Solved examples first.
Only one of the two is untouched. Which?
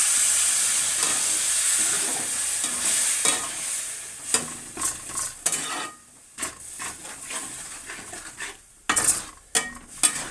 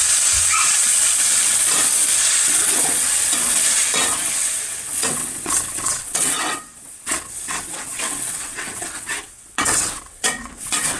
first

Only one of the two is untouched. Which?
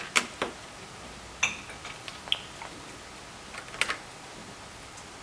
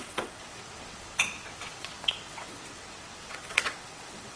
first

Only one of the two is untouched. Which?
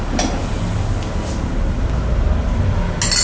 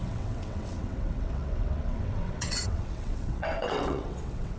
first